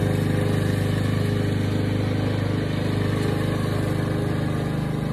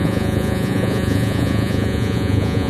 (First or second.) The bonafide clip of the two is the first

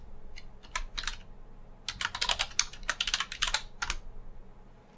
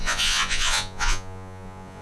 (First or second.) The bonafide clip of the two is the first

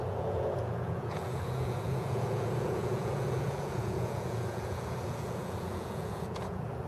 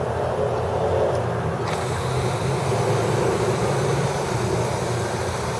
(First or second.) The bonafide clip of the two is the second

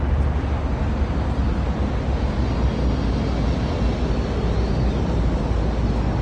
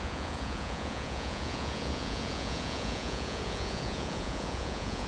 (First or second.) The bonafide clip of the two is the first